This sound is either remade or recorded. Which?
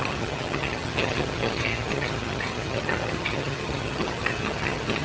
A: remade